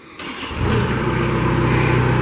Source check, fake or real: real